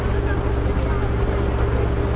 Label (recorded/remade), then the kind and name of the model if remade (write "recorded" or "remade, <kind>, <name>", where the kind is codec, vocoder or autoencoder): recorded